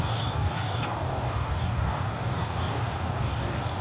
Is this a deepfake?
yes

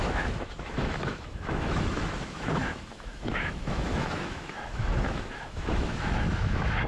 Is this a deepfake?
yes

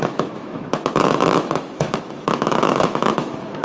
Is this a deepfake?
yes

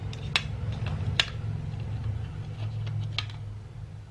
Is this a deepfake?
no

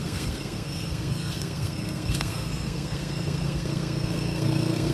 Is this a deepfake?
yes